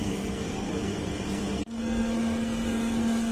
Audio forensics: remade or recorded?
remade